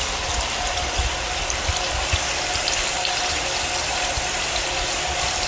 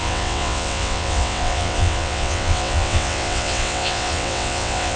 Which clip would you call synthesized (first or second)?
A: second